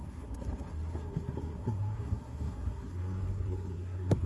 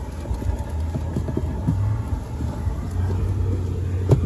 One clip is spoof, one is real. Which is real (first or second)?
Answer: second